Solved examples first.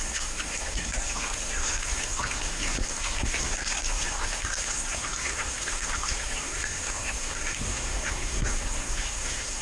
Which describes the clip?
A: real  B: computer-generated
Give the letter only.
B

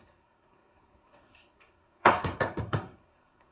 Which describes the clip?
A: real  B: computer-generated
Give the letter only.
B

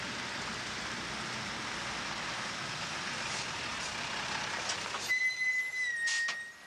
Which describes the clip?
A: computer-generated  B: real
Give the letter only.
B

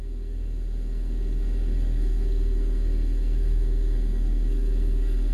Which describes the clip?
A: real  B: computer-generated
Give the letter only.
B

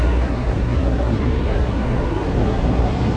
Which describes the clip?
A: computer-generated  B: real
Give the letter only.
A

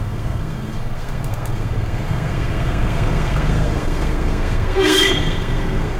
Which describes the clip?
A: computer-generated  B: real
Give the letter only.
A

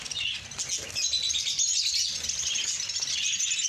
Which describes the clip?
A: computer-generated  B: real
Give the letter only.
B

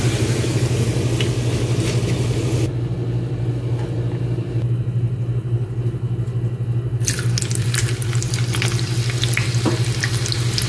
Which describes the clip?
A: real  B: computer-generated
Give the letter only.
A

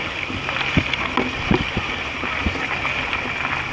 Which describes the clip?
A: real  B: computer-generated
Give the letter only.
A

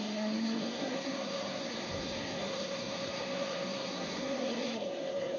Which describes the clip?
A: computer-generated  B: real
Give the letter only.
A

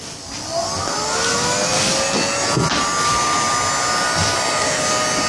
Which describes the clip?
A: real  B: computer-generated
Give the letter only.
A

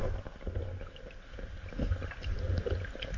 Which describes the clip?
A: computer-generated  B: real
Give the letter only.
B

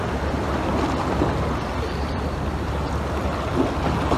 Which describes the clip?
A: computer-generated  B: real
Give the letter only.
B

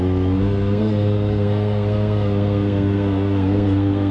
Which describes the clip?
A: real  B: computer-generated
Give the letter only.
B